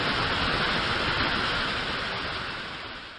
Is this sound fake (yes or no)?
no